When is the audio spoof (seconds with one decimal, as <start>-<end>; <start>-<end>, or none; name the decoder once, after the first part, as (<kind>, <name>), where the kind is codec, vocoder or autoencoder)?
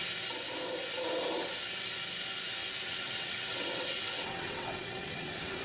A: 2.6-5.6 (vocoder, WaveNeXt)